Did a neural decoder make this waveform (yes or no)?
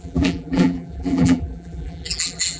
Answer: yes